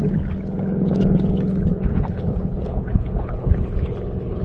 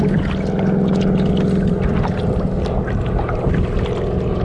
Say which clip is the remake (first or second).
first